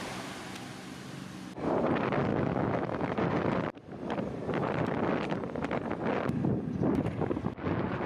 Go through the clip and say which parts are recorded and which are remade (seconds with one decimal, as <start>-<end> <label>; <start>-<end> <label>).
0.0-2.3 recorded; 2.3-3.2 remade; 3.2-8.1 recorded